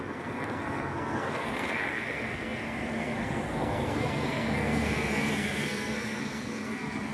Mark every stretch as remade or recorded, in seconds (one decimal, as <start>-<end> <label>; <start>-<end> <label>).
0.0-7.1 remade